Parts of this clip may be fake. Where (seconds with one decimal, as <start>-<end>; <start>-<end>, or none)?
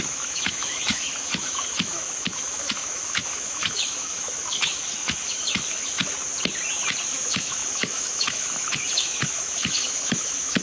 0.0-6.0; 7.1-10.6